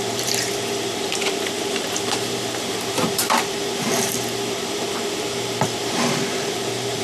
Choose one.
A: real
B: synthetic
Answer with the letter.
B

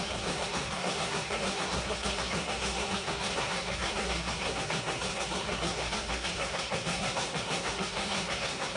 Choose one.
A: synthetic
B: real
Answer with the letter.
A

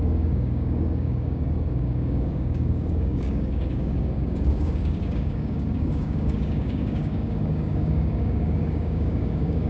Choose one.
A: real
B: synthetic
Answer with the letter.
B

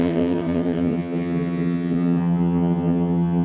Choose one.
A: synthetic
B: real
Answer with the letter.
A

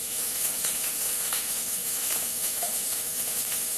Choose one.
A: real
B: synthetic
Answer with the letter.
B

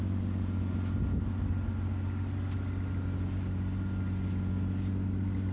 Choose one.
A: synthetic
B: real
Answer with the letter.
B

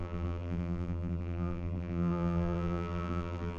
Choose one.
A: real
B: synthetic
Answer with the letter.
B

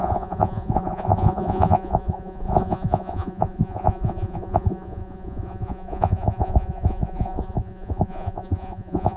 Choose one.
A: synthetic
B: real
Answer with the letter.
A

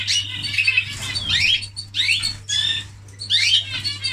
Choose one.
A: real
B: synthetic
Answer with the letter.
A